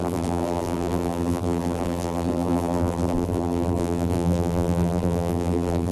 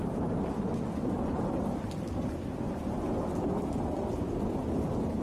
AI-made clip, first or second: first